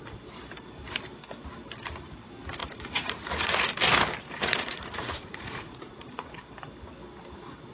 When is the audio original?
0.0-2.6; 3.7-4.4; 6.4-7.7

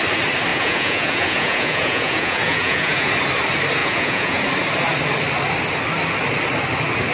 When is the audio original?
0.0-0.5; 3.1-3.8; 4.4-7.1

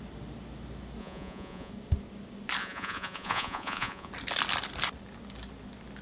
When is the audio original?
0.0-1.0; 1.7-2.6; 4.1-6.0

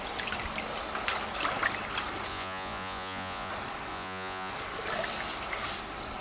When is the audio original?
0.0-2.3; 3.5-3.9; 4.5-6.2

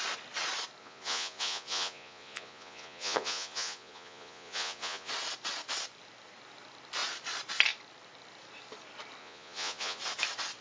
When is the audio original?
0.0-0.8; 5.1-9.2; 10.0-10.6

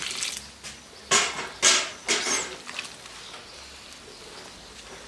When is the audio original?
0.0-5.1